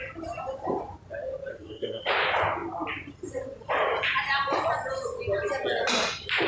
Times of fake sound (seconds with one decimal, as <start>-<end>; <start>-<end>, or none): 1.5-2.0